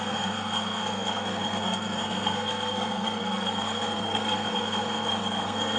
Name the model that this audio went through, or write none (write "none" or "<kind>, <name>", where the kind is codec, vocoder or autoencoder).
codec, SNAC